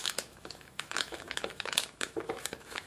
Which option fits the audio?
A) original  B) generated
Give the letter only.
B